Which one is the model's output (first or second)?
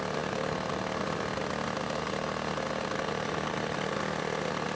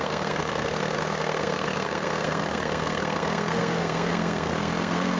second